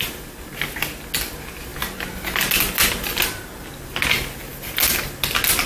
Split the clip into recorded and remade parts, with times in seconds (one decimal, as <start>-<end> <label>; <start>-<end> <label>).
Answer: 0.0-5.7 recorded